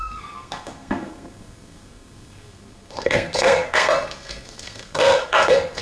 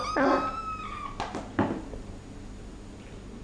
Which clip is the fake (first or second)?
first